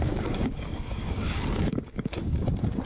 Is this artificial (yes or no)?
yes